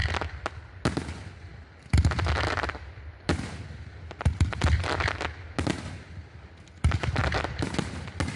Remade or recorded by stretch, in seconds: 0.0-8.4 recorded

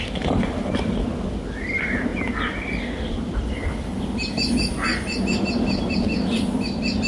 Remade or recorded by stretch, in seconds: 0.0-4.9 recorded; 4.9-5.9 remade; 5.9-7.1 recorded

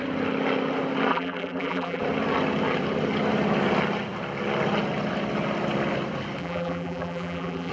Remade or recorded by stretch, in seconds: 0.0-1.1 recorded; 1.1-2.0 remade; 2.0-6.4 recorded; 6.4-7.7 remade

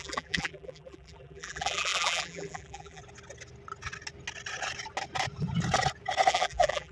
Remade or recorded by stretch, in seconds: 0.0-3.0 remade; 3.0-6.3 recorded; 6.3-6.9 remade

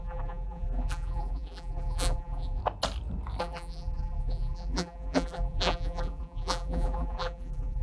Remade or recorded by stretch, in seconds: 0.0-2.6 remade; 2.6-3.4 recorded; 3.4-7.8 remade

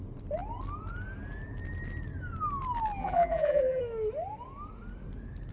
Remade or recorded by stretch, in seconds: 0.0-3.0 recorded; 3.0-3.8 remade; 3.8-5.5 recorded

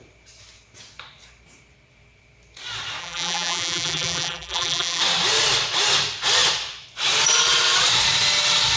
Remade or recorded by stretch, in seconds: 0.0-3.0 recorded; 3.0-5.0 remade; 5.0-8.8 recorded

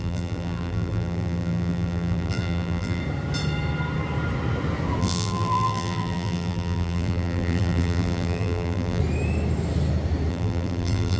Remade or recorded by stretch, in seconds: 0.0-3.0 remade; 3.0-5.0 recorded; 5.0-9.0 remade; 9.0-10.3 recorded; 10.3-11.2 remade